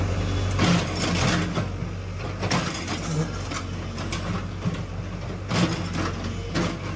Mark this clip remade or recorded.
recorded